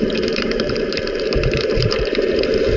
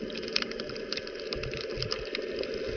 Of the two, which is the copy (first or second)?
first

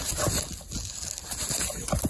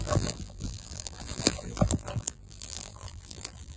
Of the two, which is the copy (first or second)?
second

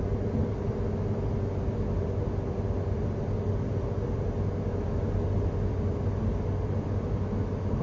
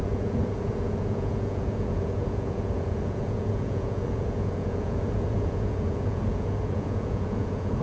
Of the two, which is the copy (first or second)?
second